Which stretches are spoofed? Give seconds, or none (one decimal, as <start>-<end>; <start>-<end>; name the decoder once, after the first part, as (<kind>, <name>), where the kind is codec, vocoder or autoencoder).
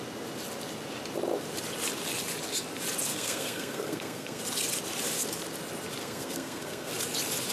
3.1-4.4 (codec, SNAC); 6.0-6.9